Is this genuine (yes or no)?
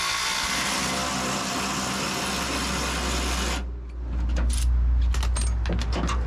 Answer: yes